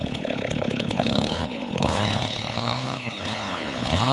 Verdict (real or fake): fake